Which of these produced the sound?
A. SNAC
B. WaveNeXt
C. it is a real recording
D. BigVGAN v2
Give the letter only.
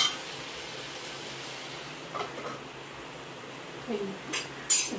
C